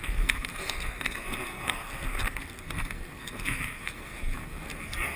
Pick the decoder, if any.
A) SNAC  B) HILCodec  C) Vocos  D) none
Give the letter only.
A